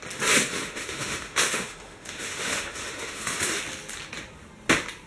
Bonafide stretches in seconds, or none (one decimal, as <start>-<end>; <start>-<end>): 0.0-0.5; 3.6-5.1